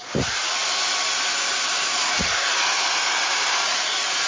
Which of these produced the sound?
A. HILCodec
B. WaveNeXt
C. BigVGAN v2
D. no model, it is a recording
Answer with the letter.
D